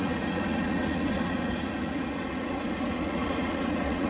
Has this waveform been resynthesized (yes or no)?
yes